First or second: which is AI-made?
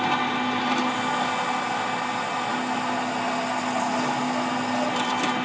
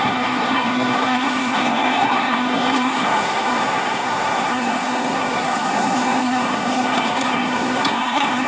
second